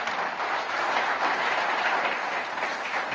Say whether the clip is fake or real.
fake